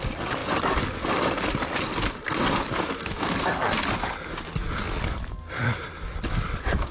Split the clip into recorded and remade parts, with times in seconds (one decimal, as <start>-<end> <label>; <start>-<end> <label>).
0.0-4.6 recorded; 4.6-5.9 remade; 5.9-6.9 recorded